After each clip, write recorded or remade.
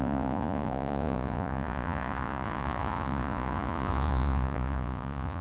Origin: remade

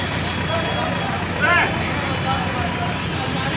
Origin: recorded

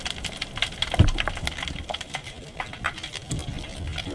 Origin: recorded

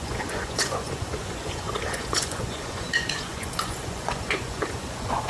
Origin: remade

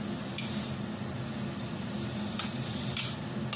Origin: recorded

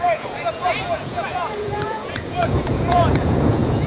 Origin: remade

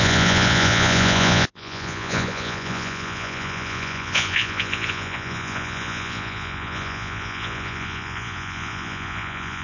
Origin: remade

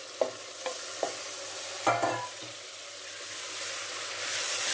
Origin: recorded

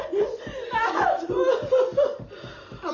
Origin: recorded